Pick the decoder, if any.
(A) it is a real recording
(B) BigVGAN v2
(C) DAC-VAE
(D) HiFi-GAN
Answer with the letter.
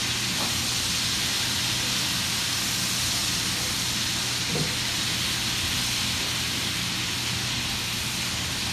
A